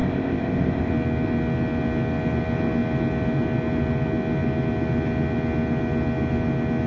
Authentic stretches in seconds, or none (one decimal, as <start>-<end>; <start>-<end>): 0.9-6.9